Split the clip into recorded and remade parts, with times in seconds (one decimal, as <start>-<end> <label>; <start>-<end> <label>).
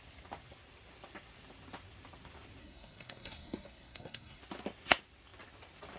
0.0-2.6 recorded; 2.6-4.4 remade; 4.4-6.0 recorded